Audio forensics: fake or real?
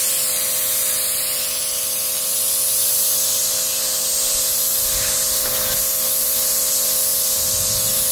real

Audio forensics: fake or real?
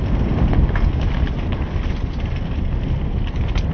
real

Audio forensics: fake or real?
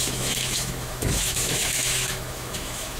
fake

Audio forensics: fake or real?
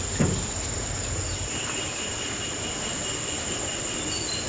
real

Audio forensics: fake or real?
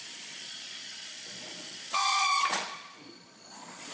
fake